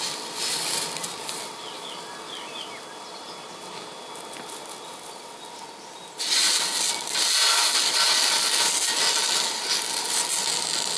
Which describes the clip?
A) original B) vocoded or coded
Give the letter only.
A